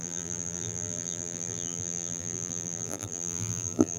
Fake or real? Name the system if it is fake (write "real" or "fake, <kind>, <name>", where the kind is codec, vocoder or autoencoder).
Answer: fake, vocoder, BigVGAN v2